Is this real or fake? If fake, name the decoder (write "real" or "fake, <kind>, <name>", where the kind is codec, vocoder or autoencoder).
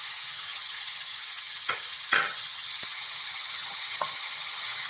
fake, vocoder, HiFi-GAN